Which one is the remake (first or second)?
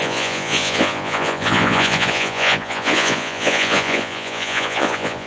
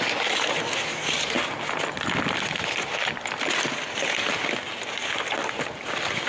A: first